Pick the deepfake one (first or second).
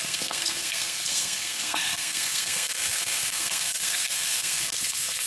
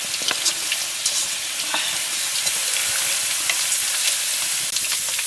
first